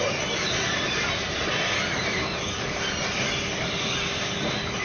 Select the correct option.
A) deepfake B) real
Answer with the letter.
B